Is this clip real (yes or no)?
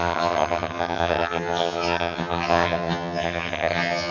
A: no